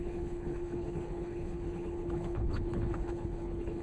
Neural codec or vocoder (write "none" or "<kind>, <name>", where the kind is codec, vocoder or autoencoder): codec, HILCodec